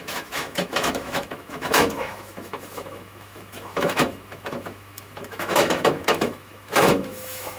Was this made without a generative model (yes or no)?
no